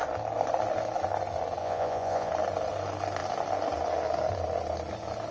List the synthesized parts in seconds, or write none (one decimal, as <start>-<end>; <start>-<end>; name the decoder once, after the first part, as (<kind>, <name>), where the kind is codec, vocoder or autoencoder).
1.6-2.3 (vocoder, Vocos)